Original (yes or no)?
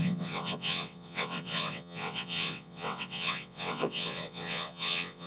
no